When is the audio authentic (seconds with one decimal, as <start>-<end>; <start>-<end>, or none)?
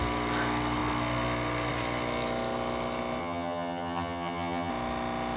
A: 0.0-3.2; 4.7-5.4